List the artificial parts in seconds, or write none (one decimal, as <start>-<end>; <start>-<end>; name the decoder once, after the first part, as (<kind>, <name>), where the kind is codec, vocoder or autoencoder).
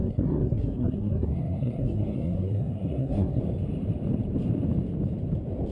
0.0-3.4 (codec, SNAC)